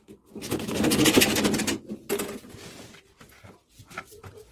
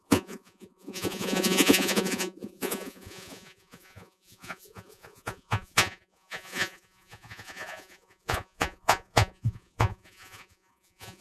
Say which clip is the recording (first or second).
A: first